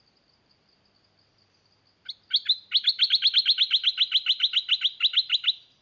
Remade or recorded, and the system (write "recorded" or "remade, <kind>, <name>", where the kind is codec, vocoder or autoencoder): recorded